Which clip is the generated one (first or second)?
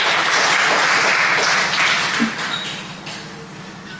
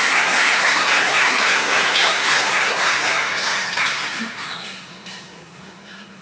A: second